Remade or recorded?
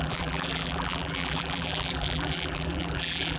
remade